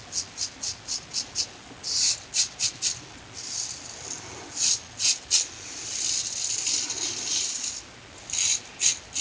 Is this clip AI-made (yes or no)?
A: no